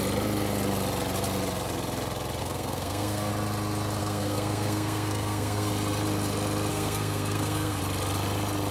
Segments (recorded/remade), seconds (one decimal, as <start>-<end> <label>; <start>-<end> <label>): 0.0-2.4 recorded; 2.4-3.3 remade; 3.3-4.0 recorded; 4.0-5.7 remade; 5.7-6.7 recorded; 6.7-7.8 remade; 7.8-8.7 recorded